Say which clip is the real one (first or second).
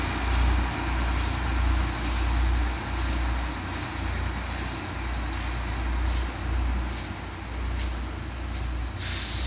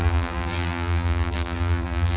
first